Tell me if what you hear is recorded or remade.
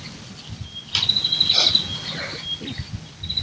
recorded